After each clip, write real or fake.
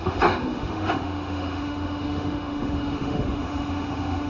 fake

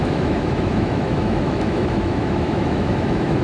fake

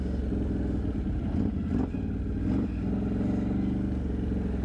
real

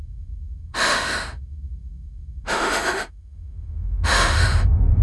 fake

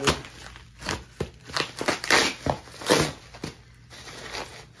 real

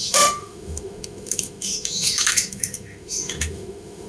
fake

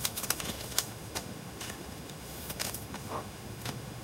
fake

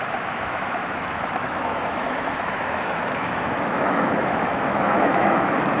fake